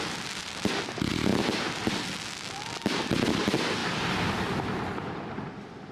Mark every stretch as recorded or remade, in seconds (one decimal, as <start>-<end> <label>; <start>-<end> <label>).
0.0-5.9 recorded

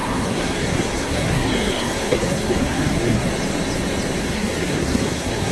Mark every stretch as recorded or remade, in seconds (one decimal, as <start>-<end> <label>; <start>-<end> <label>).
0.0-3.3 remade; 3.3-4.2 recorded; 4.2-5.5 remade

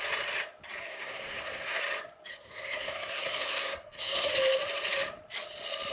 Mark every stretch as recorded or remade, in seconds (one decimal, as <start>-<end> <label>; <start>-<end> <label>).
0.0-0.9 recorded; 0.9-1.8 remade; 1.8-2.3 recorded; 2.3-4.3 remade; 4.3-5.9 recorded

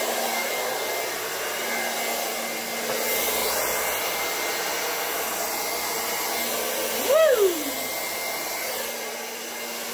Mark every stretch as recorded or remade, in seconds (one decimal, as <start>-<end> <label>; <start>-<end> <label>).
0.0-9.9 recorded

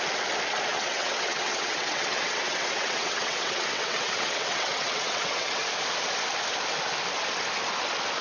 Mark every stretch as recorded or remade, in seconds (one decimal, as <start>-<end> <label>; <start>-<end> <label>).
0.0-0.7 recorded; 0.7-5.6 remade; 5.6-8.2 recorded

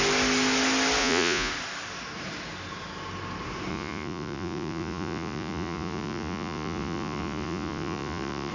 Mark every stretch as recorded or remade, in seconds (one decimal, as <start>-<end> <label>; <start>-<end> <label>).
0.0-1.0 recorded; 1.0-1.5 remade; 1.5-3.7 recorded; 3.7-8.5 remade